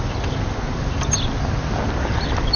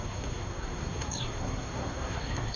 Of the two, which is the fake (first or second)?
second